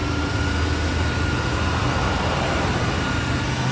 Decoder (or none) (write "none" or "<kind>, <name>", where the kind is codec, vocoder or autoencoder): none